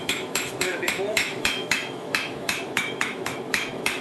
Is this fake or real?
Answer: fake